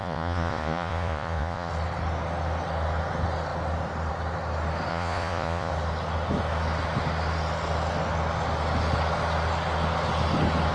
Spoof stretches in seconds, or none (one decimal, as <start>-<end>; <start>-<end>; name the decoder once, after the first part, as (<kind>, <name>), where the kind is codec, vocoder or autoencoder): 0.0-1.7 (vocoder, Vocos); 4.9-5.7